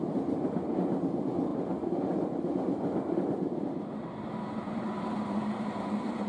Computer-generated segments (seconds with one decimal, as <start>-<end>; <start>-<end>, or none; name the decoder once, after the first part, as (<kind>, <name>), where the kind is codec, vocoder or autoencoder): none